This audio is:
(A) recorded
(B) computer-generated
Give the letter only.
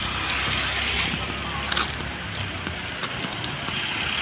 A